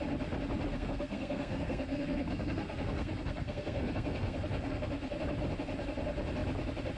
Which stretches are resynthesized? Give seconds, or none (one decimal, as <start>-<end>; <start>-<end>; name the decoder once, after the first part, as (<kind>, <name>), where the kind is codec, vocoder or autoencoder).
0.7-4.9 (codec, SNAC)